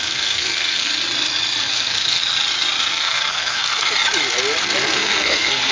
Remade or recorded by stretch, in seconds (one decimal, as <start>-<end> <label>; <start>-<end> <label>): 0.0-0.9 remade; 0.9-1.7 recorded; 1.7-2.2 remade; 2.2-2.8 recorded; 2.8-3.9 remade; 3.9-4.8 recorded; 4.8-5.7 remade